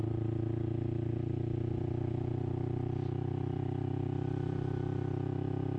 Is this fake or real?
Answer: real